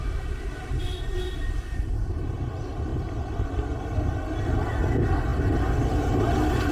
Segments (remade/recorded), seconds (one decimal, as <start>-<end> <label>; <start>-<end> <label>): 0.0-6.7 recorded